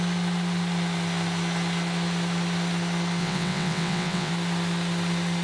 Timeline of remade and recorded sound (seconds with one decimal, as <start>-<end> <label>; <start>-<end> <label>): 0.0-3.2 recorded; 3.2-4.3 remade; 4.3-5.4 recorded